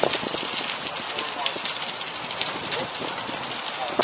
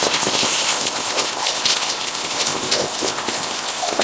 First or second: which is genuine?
first